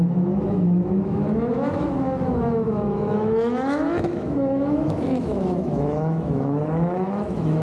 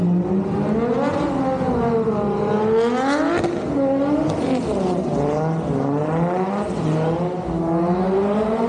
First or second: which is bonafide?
second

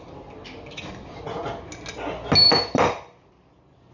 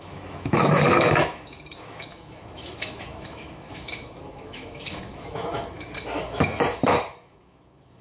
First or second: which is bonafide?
first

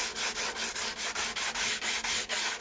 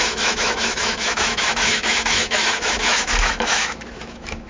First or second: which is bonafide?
first